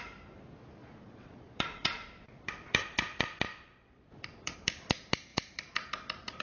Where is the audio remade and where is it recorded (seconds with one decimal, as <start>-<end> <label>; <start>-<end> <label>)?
0.0-0.8 recorded; 0.8-4.5 remade; 4.5-6.4 recorded